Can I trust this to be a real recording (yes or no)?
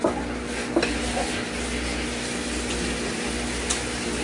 yes